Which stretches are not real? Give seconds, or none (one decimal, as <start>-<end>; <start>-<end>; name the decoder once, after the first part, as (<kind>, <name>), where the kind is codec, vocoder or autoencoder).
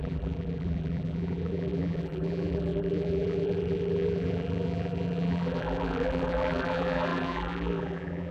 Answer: 0.0-8.3 (vocoder, BigVGAN v2)